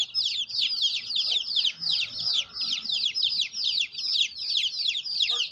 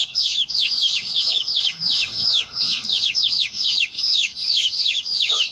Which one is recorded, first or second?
first